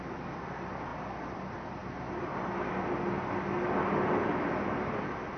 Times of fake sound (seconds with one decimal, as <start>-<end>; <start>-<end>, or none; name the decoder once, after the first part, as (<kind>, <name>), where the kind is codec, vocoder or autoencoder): none